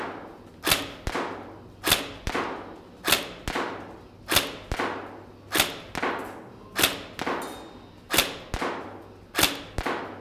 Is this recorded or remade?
recorded